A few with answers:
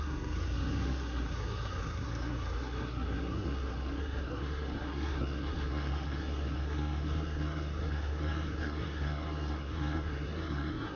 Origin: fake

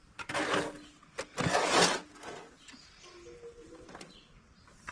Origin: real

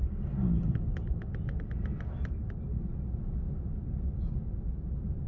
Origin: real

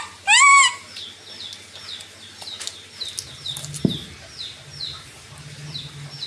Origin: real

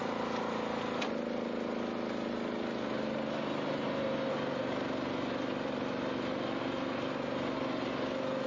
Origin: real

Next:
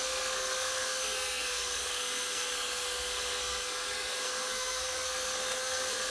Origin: fake